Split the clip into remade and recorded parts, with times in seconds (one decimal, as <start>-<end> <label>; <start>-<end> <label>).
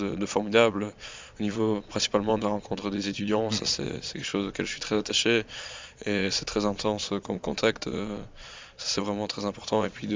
0.0-4.3 remade; 4.3-5.1 recorded; 5.1-10.2 remade